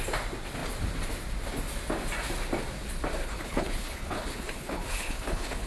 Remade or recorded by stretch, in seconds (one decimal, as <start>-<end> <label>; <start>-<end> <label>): 0.0-3.2 recorded; 3.2-5.7 remade